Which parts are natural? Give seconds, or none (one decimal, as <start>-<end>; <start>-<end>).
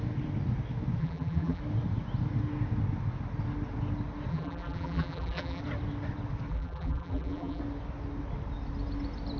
0.0-1.0; 1.6-4.3; 5.6-6.5; 7.6-9.4